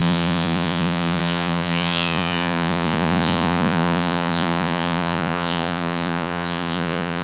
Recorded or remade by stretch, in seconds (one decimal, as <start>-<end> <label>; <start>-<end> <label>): 0.0-7.2 remade